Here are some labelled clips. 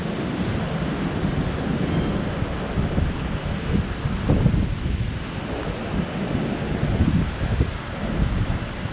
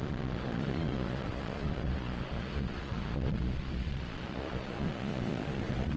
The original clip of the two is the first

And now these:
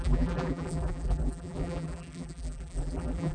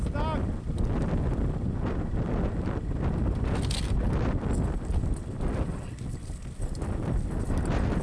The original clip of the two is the second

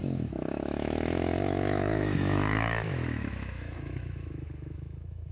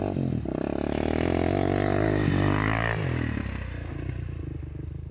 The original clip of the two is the second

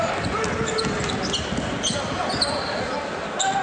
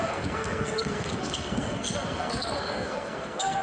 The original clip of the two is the first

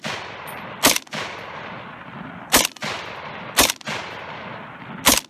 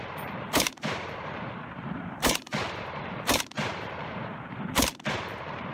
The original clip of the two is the first